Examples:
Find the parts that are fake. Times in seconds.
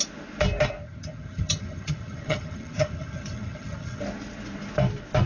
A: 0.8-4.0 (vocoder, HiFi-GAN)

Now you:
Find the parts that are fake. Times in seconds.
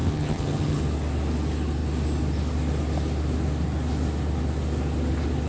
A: 0.0-0.8 (vocoder, HiFi-GAN)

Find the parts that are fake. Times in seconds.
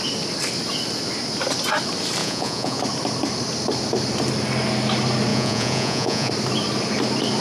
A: 2.2-2.8 (vocoder, Vocos); 5.3-6.3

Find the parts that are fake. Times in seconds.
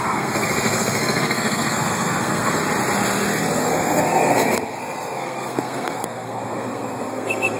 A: 0.0-2.6 (codec, SNAC); 3.6-7.6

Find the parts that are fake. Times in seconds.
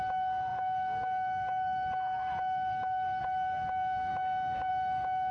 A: 0.0-4.1 (autoencoder, DAC-VAE); 4.7-5.3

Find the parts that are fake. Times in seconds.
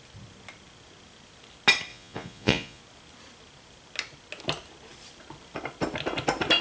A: 1.9-2.8 (vocoder, Vocos)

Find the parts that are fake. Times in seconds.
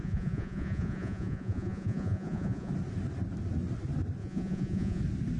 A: 0.0-2.7 (vocoder, Vocos); 4.2-5.0